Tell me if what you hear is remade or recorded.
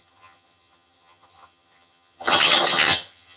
remade